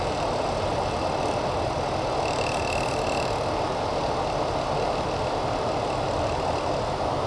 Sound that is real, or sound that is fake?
real